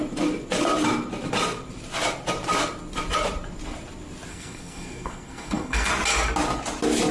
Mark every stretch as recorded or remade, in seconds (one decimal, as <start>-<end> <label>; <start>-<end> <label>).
0.0-4.3 recorded; 4.3-5.9 remade; 5.9-7.1 recorded